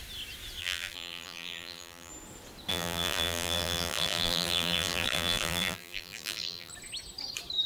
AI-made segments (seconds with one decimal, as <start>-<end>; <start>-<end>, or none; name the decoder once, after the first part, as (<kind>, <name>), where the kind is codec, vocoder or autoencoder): 0.6-2.1 (vocoder, BigVGAN v2); 2.7-6.7